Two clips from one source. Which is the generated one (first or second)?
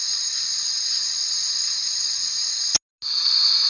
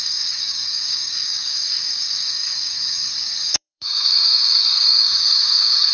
second